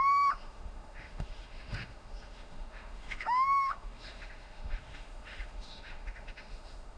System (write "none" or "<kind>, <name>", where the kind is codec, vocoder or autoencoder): autoencoder, DAC-VAE